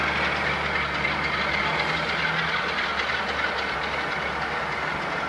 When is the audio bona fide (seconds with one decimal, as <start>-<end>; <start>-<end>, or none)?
0.0-5.3